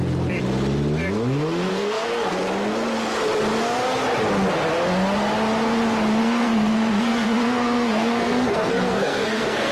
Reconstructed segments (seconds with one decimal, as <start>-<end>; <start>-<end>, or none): 1.7-2.3; 6.2-9.7